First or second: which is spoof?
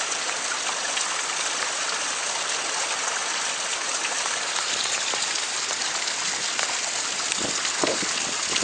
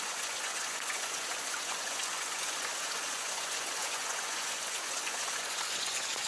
second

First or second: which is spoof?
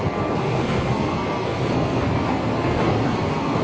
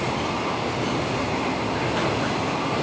first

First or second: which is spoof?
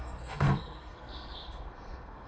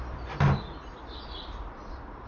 first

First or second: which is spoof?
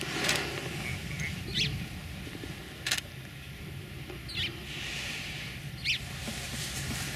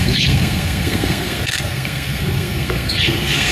second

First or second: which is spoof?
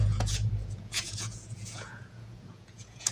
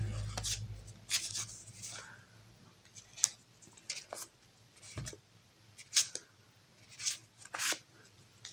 first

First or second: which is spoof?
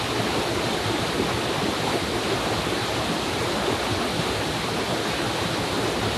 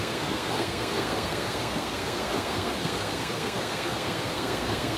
second